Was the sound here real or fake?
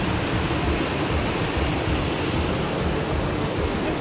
real